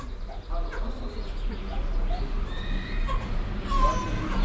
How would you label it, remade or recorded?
recorded